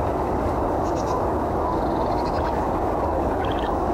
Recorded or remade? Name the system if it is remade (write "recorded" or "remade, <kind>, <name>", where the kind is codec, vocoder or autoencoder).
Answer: remade, codec, DAC